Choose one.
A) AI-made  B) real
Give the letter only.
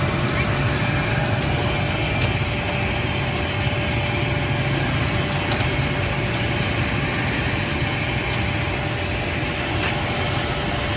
B